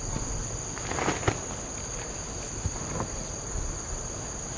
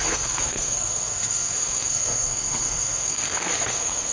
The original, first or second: first